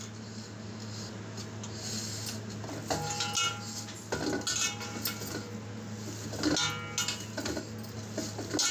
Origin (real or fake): real